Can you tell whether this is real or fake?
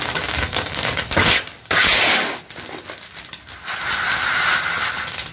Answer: real